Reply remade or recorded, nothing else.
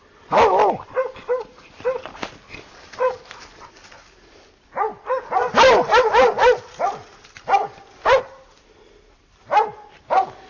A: recorded